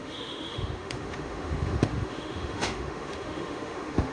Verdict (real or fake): fake